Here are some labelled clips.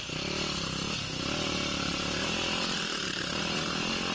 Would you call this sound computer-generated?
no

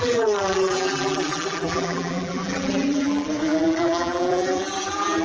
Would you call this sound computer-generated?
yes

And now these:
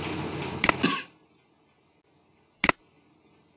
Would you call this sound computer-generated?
no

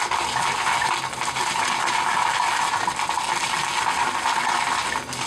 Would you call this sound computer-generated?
no